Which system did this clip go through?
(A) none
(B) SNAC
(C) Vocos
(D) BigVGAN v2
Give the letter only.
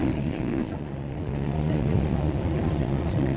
C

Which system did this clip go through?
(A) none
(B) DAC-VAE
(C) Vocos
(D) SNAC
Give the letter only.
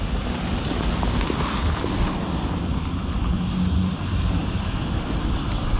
A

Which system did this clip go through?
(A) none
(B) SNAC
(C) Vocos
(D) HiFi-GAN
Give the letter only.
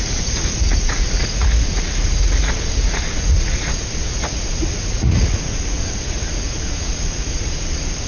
C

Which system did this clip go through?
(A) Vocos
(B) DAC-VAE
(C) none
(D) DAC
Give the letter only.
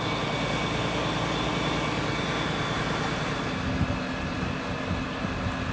C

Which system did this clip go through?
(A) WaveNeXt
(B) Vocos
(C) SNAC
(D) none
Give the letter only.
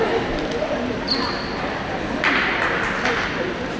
D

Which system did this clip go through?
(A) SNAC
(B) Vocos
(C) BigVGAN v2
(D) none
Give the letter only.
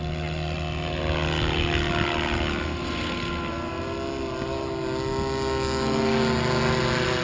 D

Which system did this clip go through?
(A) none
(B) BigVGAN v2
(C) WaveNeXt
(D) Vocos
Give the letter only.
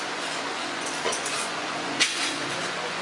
D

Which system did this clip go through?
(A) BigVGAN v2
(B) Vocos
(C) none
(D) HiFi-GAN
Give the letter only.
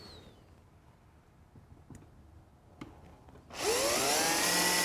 C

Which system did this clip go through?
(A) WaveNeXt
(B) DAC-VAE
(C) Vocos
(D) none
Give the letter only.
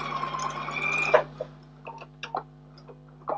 D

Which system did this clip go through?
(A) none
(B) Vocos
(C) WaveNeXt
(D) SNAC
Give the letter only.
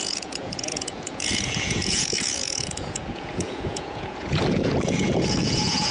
B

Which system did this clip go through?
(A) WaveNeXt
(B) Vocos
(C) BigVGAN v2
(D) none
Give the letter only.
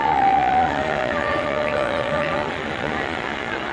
B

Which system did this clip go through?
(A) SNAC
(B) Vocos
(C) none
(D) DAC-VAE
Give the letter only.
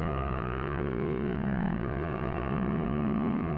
B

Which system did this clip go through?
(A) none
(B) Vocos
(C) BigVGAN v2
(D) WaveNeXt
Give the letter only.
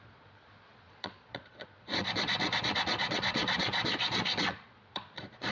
B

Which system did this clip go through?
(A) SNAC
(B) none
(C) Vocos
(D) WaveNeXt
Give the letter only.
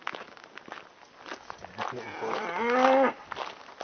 B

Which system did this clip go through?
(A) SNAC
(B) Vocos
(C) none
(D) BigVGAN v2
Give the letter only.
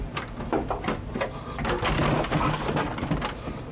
C